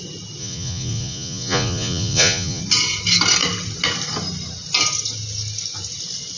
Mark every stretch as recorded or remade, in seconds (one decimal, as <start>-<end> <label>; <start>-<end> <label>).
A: 0.0-0.4 recorded; 0.4-2.6 remade; 2.6-6.4 recorded